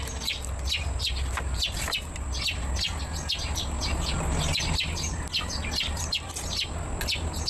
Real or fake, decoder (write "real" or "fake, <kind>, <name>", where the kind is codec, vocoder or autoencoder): real